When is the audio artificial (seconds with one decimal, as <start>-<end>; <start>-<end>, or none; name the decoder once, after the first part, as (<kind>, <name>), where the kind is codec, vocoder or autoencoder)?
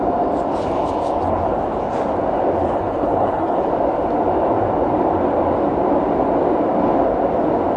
2.6-3.7 (codec, HILCodec)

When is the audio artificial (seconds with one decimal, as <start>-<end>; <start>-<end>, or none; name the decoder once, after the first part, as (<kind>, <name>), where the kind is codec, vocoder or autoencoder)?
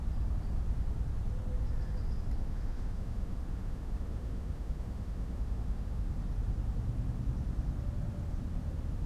2.4-6.1 (autoencoder, DAC-VAE)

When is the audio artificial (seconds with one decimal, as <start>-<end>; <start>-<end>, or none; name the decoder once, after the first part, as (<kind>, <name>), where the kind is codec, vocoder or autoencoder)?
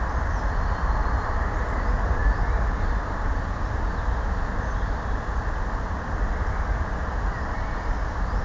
none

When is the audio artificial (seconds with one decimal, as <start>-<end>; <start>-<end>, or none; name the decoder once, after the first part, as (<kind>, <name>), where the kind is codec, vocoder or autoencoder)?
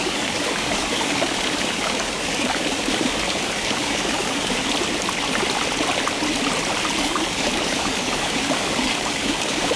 0.0-4.6 (codec, DAC); 7.0-9.8